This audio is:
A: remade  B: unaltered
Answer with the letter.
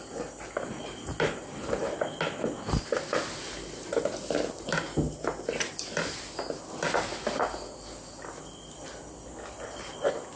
B